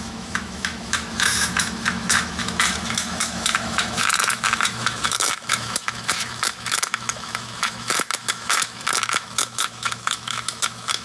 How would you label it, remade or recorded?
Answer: remade